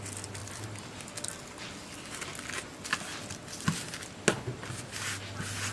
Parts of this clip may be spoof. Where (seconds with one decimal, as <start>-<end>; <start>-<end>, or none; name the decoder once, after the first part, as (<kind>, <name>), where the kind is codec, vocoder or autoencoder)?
none